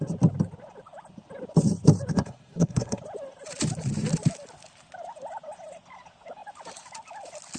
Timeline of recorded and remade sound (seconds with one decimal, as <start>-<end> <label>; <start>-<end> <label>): 0.0-2.1 recorded; 2.1-3.0 remade; 3.0-7.6 recorded